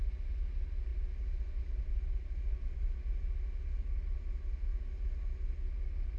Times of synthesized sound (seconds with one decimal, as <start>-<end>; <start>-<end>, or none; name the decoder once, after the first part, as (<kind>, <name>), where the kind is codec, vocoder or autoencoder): none

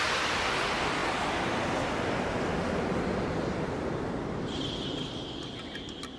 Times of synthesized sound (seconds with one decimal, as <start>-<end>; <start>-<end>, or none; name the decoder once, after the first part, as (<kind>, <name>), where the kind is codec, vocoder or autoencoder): none